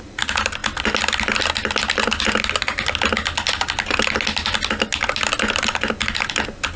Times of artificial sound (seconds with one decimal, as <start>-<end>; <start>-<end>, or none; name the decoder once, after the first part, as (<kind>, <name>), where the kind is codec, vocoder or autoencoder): none